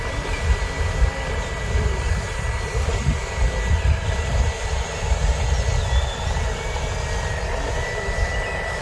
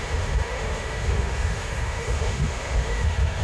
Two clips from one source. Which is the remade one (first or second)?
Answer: second